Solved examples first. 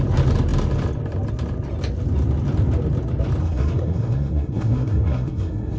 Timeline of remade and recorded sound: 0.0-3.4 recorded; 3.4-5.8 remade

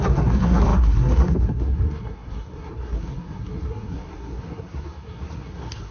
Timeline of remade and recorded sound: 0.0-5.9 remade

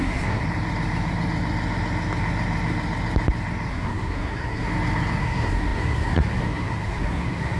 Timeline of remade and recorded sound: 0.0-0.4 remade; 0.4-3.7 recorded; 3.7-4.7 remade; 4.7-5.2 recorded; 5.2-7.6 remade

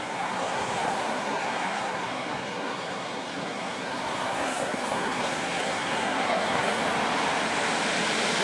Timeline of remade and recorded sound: 0.0-6.8 remade; 6.8-8.4 recorded

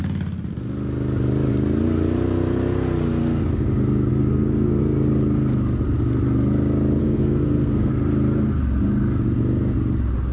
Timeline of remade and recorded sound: 0.0-4.1 recorded; 4.1-4.8 remade; 4.8-7.0 recorded; 7.0-7.9 remade; 7.9-10.3 recorded